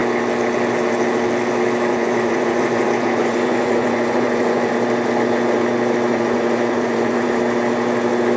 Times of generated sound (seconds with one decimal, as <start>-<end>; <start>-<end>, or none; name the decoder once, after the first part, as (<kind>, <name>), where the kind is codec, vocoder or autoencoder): 1.9-4.7 (vocoder, Vocos); 6.1-7.3